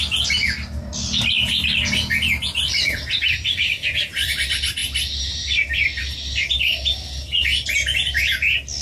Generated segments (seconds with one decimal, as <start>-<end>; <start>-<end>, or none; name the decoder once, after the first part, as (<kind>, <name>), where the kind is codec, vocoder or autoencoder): none